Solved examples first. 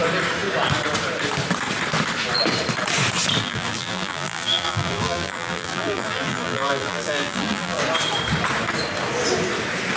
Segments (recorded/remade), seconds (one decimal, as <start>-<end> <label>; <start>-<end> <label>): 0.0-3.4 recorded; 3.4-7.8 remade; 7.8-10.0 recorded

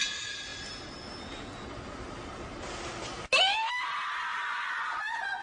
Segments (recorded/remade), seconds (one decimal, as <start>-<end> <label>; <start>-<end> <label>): 0.0-4.3 recorded; 4.3-5.4 remade

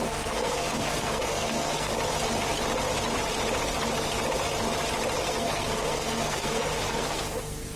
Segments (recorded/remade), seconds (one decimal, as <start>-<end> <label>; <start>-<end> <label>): 0.0-1.9 remade; 1.9-5.2 recorded; 5.2-7.8 remade